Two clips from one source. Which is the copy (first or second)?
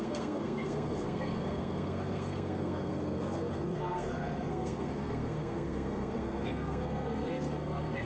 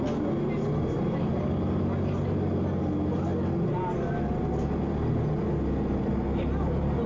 first